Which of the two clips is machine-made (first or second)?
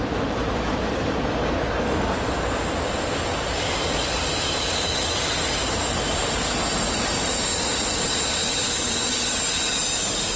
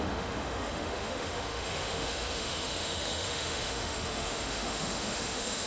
second